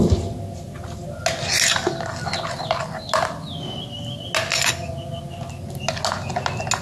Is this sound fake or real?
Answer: real